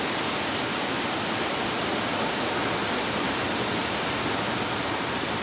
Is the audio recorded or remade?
recorded